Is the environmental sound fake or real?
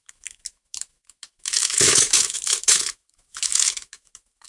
fake